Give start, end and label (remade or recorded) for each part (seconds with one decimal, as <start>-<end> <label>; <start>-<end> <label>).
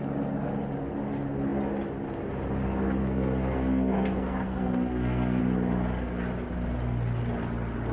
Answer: 0.0-3.0 recorded; 3.0-5.4 remade; 5.4-7.9 recorded